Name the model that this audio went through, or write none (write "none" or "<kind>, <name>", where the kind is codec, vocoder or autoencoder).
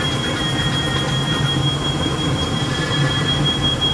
vocoder, BigVGAN v2